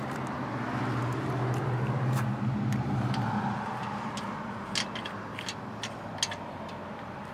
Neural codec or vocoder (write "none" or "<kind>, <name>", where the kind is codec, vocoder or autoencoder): none